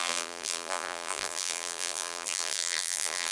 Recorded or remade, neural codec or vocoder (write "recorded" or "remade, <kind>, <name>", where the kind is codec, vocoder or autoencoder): remade, vocoder, BigVGAN v2